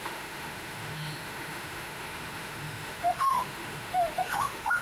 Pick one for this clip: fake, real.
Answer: fake